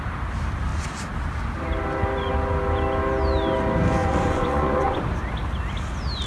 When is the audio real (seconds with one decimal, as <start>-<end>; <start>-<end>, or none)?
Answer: 0.0-4.0; 5.0-6.3